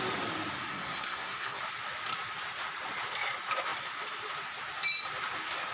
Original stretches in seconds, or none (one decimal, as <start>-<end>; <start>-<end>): 0.0-0.7; 1.6-5.7